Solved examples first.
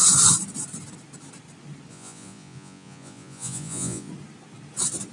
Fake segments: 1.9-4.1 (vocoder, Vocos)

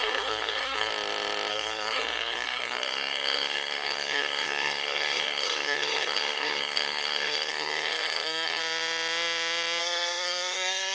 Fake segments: 0.0-0.9 (codec, SNAC); 1.5-8.6; 9.8-10.9

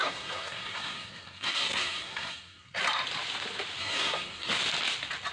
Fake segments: 0.0-2.8 (codec, SNAC); 3.8-4.5

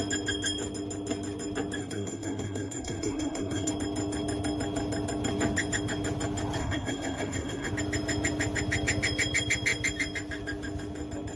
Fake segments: 1.8-3.7 (codec, SNAC); 6.6-7.7

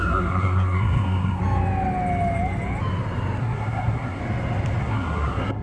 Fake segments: 0.0-1.4 (codec, SNAC); 3.4-4.2; 4.8-5.6

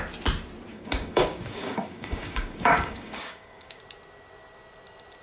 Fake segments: 0.7-3.8 (codec, DAC)

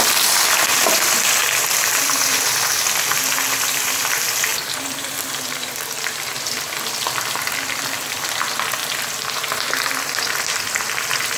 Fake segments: 4.5-8.3 (vocoder, BigVGAN v2)

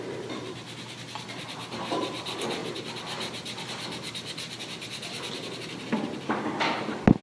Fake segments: none